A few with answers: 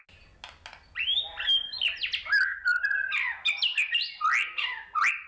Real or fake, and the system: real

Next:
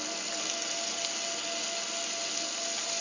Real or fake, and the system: real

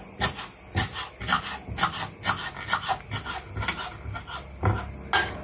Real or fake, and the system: real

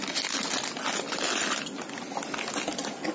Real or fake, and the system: real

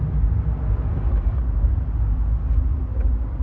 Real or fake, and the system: real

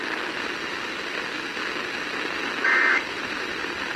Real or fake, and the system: real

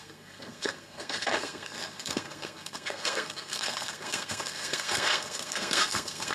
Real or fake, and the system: fake, codec, SNAC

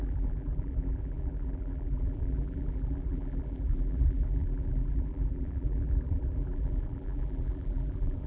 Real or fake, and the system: fake, vocoder, BigVGAN v2